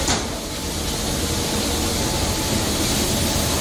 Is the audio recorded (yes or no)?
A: yes